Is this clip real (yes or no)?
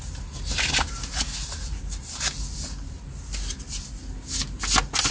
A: yes